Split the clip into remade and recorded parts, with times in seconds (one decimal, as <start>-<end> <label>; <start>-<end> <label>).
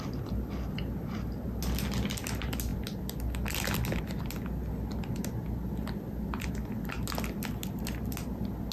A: 0.0-8.7 recorded